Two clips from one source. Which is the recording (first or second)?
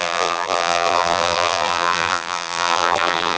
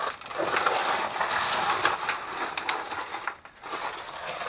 second